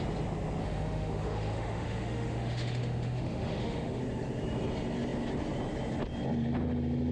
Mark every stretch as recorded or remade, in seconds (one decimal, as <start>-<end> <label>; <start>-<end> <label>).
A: 0.0-0.6 recorded; 0.6-4.0 remade; 4.0-7.1 recorded